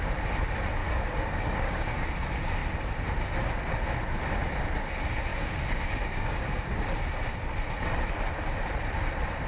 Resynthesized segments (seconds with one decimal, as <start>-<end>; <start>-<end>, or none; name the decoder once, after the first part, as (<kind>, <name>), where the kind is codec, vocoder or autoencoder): 0.8-2.1 (codec, DAC); 5.3-6.7